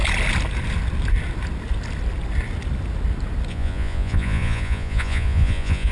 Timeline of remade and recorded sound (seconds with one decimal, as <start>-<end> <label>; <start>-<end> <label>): 0.0-3.5 recorded; 3.5-5.9 remade

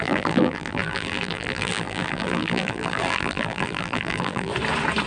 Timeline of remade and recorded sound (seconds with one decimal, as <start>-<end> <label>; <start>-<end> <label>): 0.0-4.5 remade; 4.5-5.1 recorded

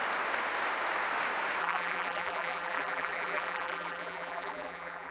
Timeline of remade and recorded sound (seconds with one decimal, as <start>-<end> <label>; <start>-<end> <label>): 0.0-1.6 recorded; 1.6-5.1 remade